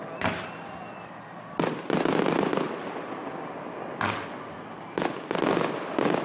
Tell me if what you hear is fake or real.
real